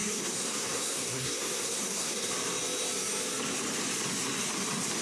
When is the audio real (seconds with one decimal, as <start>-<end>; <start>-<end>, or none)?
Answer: 2.3-5.0